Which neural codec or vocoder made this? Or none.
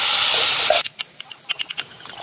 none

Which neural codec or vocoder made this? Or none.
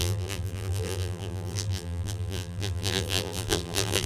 vocoder, BigVGAN v2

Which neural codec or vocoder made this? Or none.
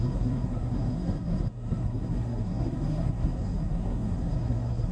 codec, SNAC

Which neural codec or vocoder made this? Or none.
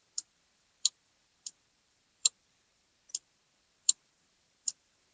vocoder, BigVGAN v2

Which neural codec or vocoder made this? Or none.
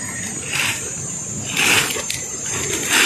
none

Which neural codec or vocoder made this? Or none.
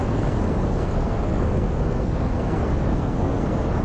codec, SNAC